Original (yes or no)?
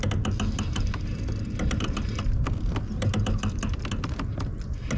yes